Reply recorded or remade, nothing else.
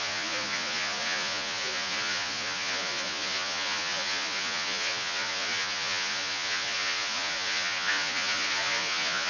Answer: remade